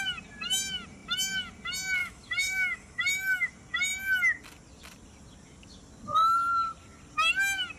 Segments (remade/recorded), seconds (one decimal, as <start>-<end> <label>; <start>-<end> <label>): 0.0-2.0 recorded; 2.0-3.5 remade; 3.5-7.8 recorded